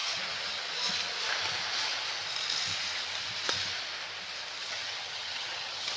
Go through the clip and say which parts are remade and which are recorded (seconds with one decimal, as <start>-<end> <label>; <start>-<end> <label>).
0.0-0.6 remade; 0.6-4.6 recorded; 4.6-6.0 remade